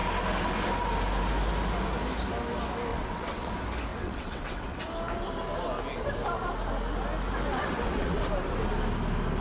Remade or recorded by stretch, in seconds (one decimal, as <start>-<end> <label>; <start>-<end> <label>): 0.0-2.9 recorded; 2.9-3.5 remade; 3.5-3.9 recorded; 3.9-4.8 remade; 4.8-7.5 recorded; 7.5-8.2 remade; 8.2-9.4 recorded